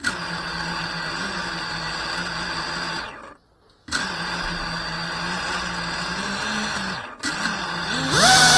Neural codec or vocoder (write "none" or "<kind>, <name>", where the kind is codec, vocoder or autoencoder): none